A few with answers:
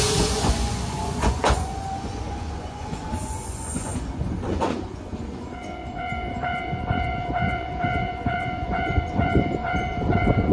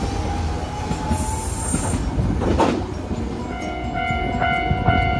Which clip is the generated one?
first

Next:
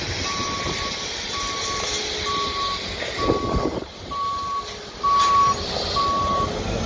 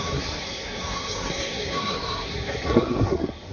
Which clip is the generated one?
second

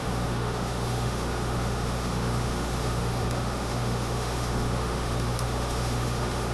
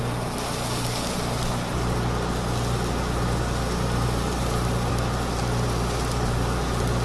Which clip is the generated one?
first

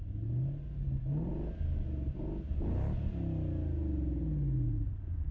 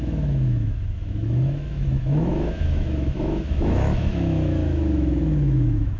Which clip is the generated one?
second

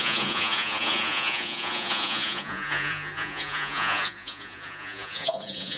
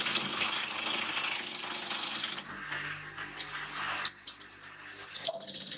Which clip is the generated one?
first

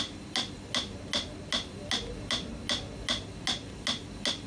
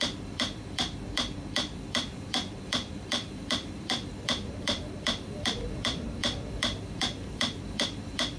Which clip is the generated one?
second